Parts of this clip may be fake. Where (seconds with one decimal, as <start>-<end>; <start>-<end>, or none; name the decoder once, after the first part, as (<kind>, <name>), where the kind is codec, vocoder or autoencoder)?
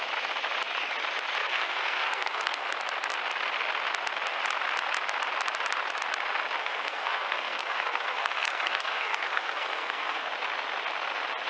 1.4-2.7 (codec, SNAC); 6.6-10.3